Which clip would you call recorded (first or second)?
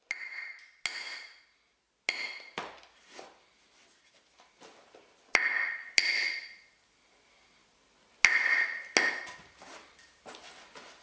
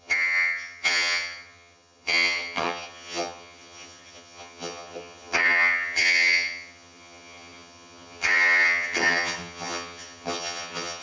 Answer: first